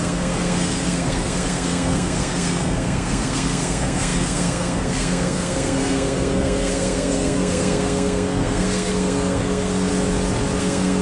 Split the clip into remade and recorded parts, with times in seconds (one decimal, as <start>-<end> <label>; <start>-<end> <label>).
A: 0.0-9.9 remade; 9.9-10.6 recorded; 10.6-11.0 remade